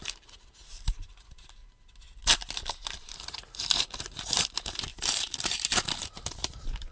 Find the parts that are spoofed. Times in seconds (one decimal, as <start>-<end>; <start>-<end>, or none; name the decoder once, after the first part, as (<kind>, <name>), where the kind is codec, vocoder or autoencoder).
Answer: 0.0-1.6 (vocoder, BigVGAN v2); 4.2-6.9